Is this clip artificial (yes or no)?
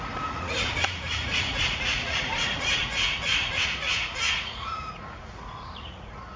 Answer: yes